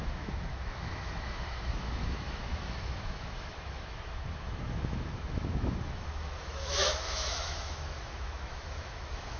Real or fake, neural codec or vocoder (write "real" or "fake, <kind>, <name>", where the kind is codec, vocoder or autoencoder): fake, autoencoder, DAC-VAE